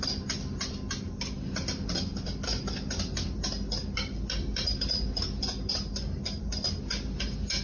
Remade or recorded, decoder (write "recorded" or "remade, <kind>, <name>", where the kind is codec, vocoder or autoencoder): recorded